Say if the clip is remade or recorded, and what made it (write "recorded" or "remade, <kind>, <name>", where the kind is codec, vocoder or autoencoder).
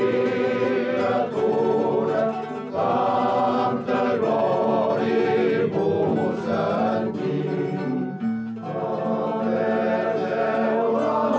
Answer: recorded